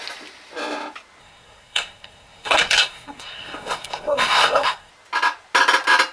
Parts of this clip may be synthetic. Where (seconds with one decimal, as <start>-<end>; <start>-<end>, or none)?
1.2-4.9